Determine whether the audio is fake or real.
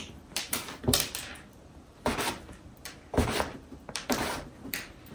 fake